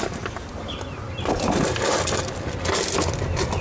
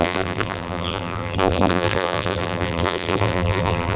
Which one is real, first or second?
first